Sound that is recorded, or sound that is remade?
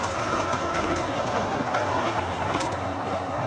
remade